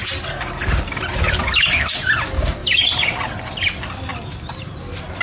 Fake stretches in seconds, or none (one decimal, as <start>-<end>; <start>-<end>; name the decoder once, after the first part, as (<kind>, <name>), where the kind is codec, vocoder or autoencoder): 2.6-3.3 (vocoder, BigVGAN v2); 4.1-4.7